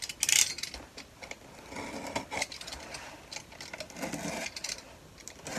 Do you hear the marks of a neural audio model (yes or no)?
no